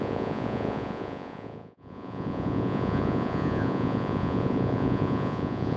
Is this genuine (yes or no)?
no